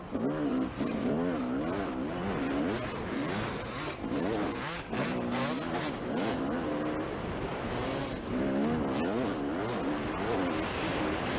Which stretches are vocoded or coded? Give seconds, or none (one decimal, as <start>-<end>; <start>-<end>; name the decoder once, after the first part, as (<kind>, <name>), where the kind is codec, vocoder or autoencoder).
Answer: 0.5-1.1 (vocoder, BigVGAN v2); 7.5-8.2